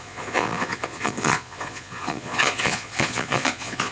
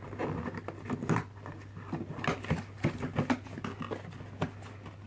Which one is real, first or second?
second